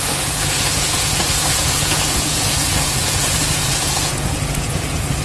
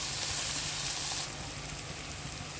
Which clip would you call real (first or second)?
second